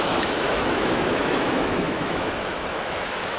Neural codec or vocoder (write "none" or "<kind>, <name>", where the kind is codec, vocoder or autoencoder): autoencoder, DAC-VAE